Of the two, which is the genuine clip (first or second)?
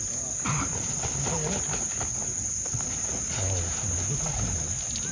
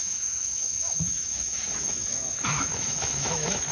first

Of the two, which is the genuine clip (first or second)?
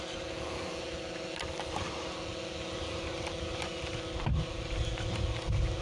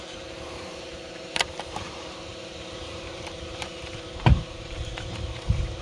first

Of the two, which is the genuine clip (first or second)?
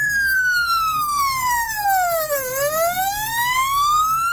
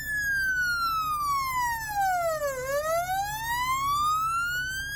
second